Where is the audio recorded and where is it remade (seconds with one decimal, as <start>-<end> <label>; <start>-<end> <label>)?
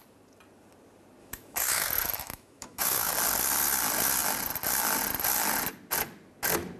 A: 0.0-1.2 recorded; 1.2-3.1 remade; 3.1-6.8 recorded